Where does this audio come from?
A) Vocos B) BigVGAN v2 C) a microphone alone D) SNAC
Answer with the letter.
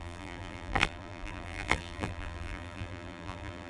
B